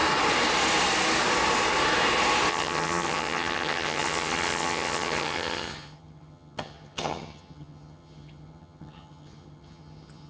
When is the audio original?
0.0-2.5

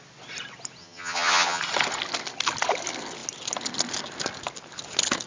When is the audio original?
0.0-0.8; 1.6-5.3

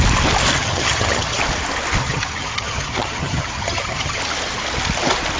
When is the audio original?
0.0-0.5; 1.4-2.0; 4.2-5.4

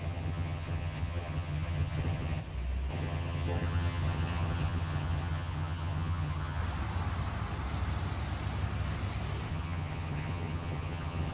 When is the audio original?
2.4-2.9; 6.6-9.5

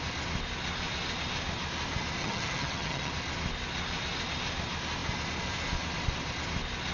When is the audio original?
0.0-2.2; 3.1-6.9

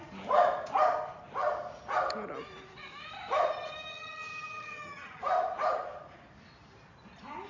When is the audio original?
0.0-3.9; 5.2-7.5

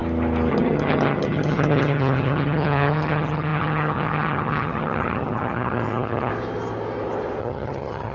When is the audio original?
0.0-0.5; 6.3-7.4

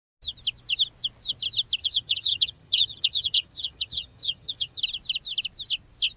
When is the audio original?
0.0-1.8; 4.8-6.2